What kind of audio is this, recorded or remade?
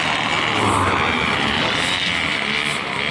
recorded